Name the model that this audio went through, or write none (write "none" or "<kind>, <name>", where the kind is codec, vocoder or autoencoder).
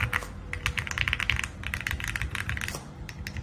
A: none